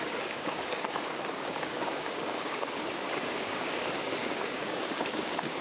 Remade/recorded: remade